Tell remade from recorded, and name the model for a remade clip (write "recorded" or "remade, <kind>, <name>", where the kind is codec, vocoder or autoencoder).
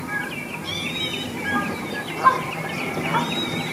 recorded